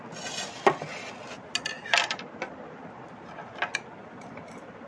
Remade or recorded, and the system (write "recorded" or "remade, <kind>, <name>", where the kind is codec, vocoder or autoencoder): recorded